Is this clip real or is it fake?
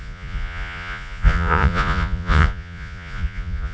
fake